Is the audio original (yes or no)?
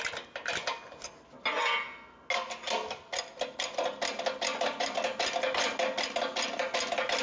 yes